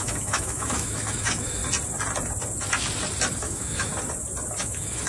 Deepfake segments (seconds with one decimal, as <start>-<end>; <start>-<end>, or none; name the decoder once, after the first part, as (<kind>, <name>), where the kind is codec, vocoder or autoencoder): 0.0-1.6 (autoencoder, DAC-VAE); 3.4-3.9; 4.6-5.1